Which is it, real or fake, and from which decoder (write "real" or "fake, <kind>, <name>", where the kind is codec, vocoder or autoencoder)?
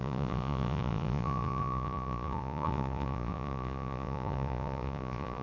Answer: fake, vocoder, Vocos